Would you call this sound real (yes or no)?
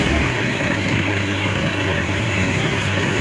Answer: no